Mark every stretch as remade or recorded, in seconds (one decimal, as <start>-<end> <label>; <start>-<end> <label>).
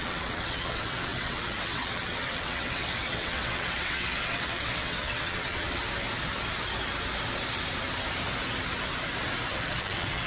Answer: 0.0-5.8 remade; 5.8-9.5 recorded; 9.5-10.3 remade